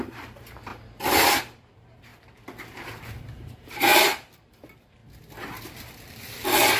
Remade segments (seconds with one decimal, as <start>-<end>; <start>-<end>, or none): 0.0-0.7; 1.4-2.1; 3.1-5.0